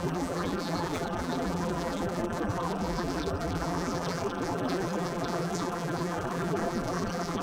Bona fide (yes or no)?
no